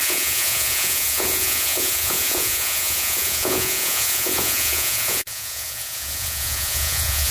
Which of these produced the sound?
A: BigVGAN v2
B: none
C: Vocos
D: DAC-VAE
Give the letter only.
C